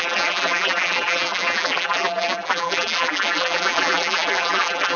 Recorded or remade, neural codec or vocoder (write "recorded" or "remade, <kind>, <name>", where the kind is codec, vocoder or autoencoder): remade, vocoder, BigVGAN v2